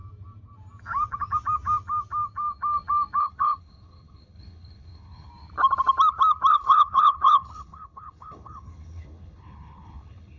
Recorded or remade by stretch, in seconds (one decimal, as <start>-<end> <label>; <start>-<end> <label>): 0.0-3.2 recorded; 3.2-5.3 remade; 5.3-6.5 recorded; 6.5-10.4 remade